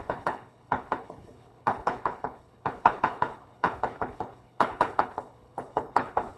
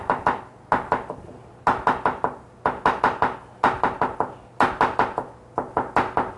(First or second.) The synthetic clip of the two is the first